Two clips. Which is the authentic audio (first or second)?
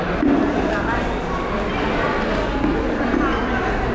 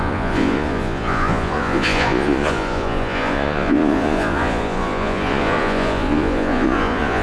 first